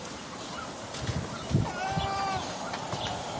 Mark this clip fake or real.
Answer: real